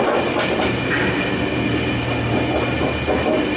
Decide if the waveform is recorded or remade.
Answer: recorded